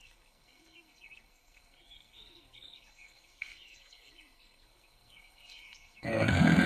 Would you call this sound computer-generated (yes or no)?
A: yes